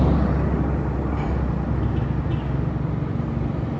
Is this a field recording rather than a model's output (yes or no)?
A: yes